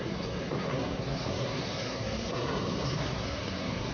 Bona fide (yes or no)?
no